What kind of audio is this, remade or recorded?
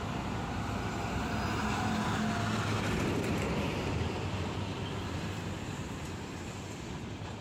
recorded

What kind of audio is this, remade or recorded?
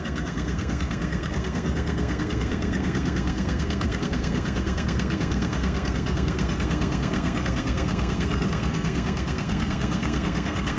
remade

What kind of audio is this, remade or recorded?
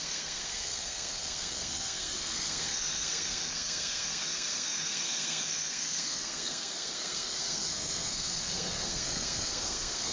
remade